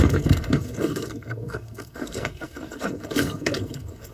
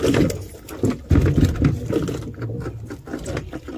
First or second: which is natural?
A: second